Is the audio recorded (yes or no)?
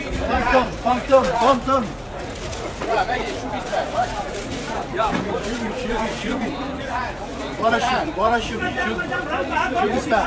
no